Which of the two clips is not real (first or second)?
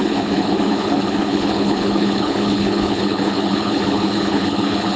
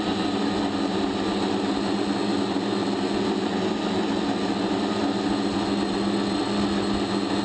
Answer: first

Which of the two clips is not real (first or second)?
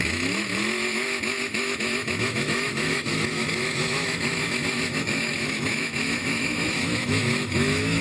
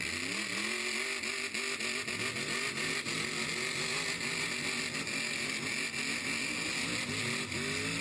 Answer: first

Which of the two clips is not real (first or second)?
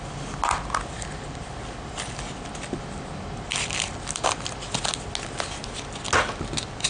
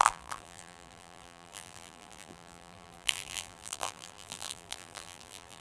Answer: second